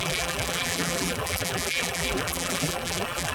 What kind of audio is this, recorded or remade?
remade